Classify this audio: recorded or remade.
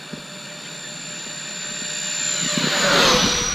recorded